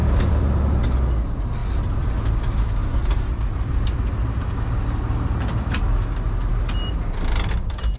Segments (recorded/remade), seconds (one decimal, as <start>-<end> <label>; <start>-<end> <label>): 0.0-0.8 remade; 0.8-1.6 recorded; 1.6-2.2 remade; 2.2-2.8 recorded; 2.8-4.1 remade; 4.1-8.0 recorded